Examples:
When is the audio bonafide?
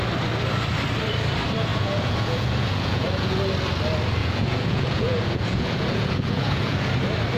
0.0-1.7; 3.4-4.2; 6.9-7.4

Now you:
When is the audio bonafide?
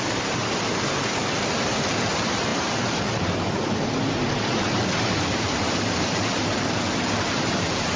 none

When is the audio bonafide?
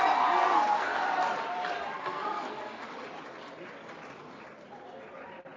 0.0-0.4; 1.0-2.0; 2.8-5.6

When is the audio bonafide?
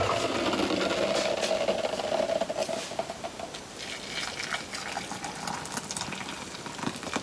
0.0-7.2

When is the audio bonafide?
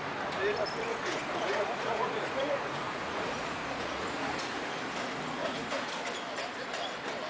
0.0-0.9; 4.7-5.4; 6.0-7.3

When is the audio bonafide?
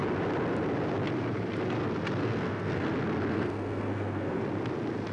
0.0-2.2; 2.9-3.3; 4.4-5.1